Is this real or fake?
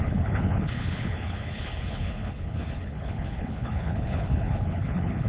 fake